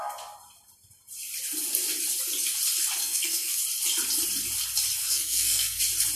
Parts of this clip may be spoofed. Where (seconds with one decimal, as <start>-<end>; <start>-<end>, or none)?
3.0-3.6; 5.0-5.8